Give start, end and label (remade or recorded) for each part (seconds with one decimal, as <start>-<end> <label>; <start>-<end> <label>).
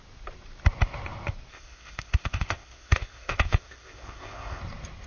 0.0-1.5 recorded; 1.5-4.6 remade; 4.6-5.1 recorded